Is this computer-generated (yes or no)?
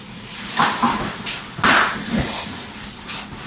no